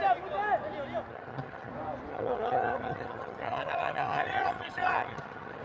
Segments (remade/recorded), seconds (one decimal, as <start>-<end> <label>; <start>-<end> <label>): 0.0-1.1 recorded; 1.1-1.7 remade; 1.7-2.1 recorded; 2.1-5.6 remade